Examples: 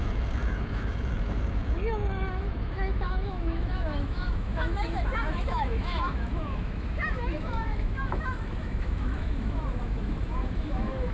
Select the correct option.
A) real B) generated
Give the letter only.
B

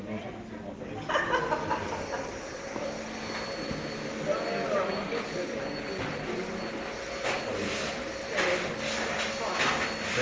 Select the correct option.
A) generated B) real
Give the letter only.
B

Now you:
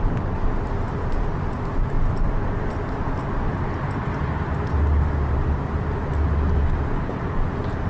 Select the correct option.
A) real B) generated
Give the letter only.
A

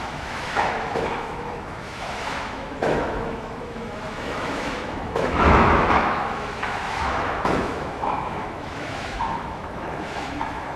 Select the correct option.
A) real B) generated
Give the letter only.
B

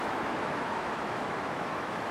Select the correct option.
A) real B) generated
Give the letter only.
B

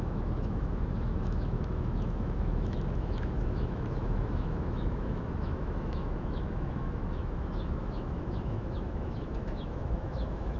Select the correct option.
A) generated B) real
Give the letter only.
A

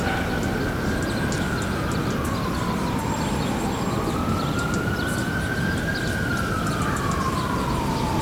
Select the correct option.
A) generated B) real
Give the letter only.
B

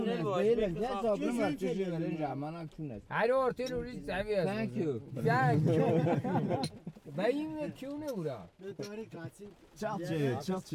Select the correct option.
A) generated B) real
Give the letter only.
B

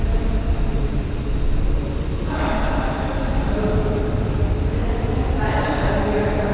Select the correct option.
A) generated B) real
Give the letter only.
B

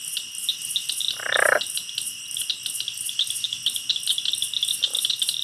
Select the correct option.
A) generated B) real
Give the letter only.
B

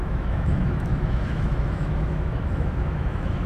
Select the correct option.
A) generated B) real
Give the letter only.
A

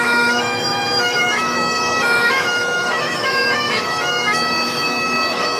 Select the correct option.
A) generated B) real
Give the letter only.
A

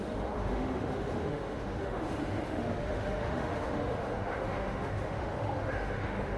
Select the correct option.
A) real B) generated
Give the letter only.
B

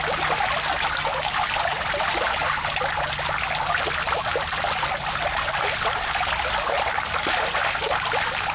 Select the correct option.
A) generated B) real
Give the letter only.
B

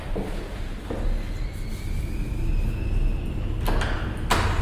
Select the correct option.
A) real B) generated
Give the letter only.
A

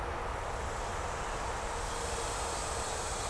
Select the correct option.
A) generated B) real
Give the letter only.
B